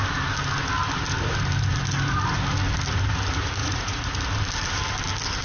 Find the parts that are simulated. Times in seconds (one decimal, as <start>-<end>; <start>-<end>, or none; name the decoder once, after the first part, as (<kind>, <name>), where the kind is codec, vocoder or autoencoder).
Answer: 3.6-4.2 (vocoder, Vocos)